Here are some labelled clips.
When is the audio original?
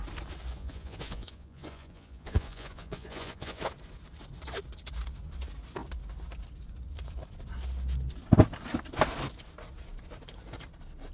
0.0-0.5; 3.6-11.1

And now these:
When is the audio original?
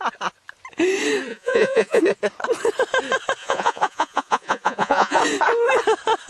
0.0-1.3; 2.0-3.4; 5.2-6.3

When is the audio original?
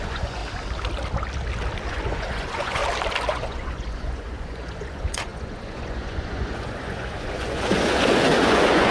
0.4-1.9; 2.8-3.3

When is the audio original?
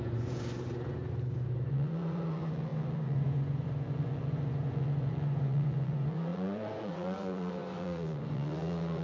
1.0-1.7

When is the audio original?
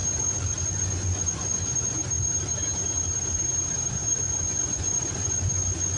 0.0-0.6; 2.0-3.9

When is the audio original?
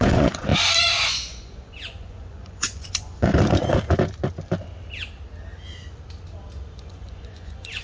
0.5-1.1; 3.3-6.8